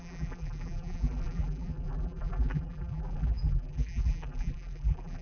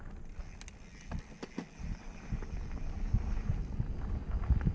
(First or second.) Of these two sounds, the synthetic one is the first